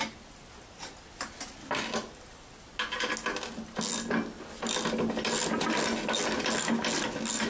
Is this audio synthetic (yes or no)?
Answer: no